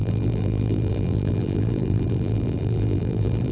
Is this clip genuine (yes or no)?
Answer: no